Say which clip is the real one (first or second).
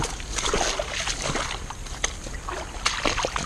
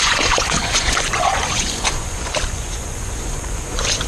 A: first